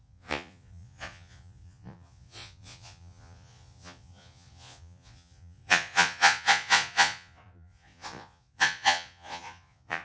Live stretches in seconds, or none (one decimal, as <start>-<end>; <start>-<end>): none